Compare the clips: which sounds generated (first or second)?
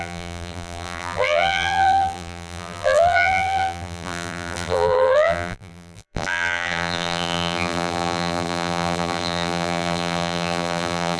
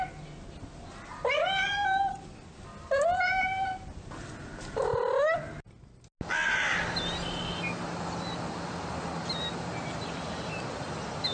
first